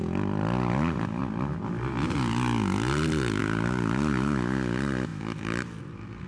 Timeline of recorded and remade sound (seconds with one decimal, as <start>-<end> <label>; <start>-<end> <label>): 0.0-6.3 recorded

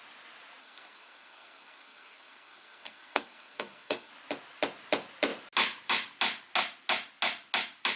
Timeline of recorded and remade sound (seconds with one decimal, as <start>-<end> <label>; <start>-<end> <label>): 0.0-0.6 recorded; 0.6-4.1 remade; 4.1-8.0 recorded

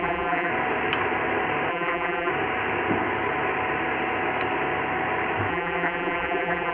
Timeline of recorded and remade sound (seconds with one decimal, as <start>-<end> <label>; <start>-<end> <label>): 0.0-0.5 remade; 0.5-1.7 recorded; 1.7-2.3 remade; 2.3-5.5 recorded; 5.5-6.7 remade

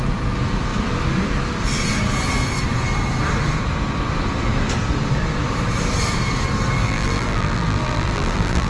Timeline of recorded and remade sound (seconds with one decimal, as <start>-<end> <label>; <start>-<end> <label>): 0.0-6.8 recorded; 6.8-8.7 remade